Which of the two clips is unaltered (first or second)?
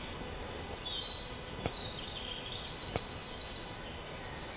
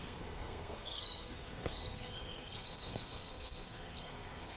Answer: first